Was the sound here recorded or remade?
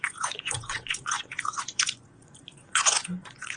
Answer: remade